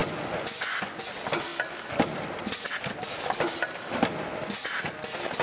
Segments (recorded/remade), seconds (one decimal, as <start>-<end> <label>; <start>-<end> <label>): 0.0-1.1 remade; 1.1-5.4 recorded